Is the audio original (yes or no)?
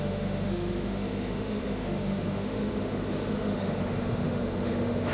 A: no